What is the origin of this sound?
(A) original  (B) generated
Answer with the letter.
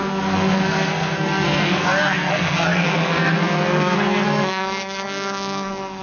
B